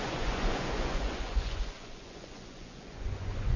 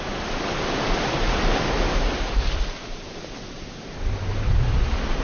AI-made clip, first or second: first